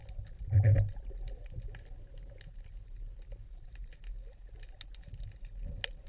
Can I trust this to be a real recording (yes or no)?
yes